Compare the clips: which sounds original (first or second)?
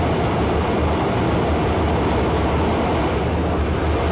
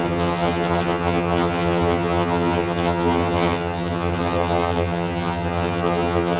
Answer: first